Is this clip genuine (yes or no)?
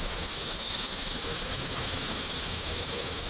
no